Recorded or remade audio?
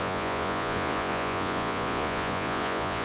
remade